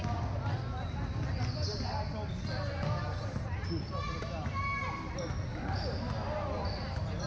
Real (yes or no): yes